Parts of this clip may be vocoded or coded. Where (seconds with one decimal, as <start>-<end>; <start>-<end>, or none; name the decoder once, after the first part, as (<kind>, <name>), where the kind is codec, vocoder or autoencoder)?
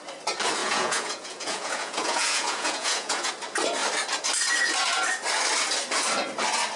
0.6-3.3 (vocoder, Vocos)